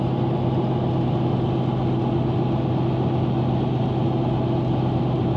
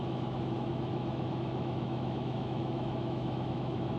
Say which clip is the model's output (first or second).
second